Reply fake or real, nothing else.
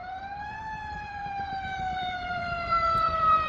fake